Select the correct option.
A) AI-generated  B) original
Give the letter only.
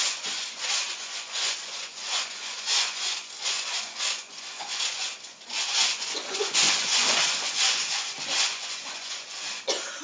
A